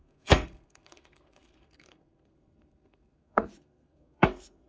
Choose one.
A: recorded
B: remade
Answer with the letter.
B